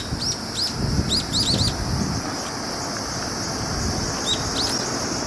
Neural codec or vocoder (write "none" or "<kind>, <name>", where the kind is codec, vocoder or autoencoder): none